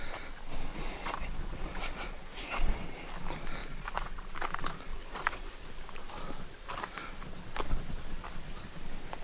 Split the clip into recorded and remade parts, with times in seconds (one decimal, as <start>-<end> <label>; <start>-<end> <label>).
0.0-0.7 recorded; 0.7-2.8 remade; 2.8-3.6 recorded; 3.6-4.3 remade; 4.3-4.9 recorded; 4.9-5.7 remade; 5.7-9.2 recorded